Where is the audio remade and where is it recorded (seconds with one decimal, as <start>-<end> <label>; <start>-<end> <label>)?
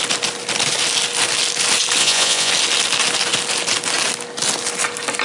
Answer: 0.0-2.0 recorded; 2.0-2.5 remade; 2.5-5.2 recorded